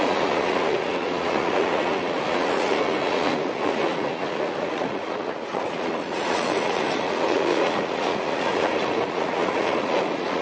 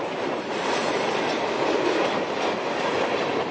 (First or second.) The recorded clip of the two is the second